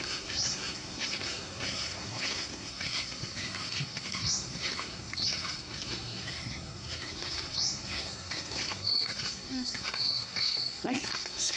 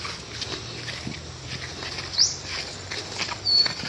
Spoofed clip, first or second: first